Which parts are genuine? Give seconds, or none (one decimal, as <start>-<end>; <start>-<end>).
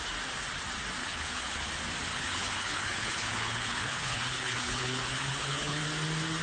0.0-1.0; 1.7-2.1; 5.8-6.4